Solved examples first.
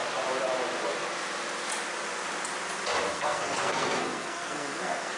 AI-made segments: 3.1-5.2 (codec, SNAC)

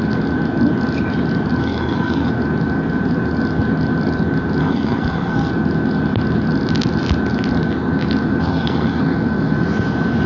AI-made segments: 1.6-2.3 (codec, SNAC); 4.6-5.5; 8.4-9.0